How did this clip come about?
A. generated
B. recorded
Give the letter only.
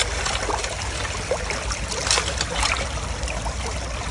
B